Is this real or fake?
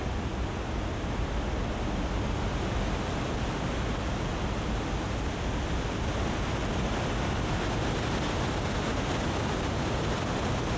real